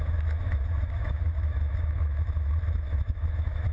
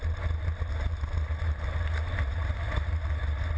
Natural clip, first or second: second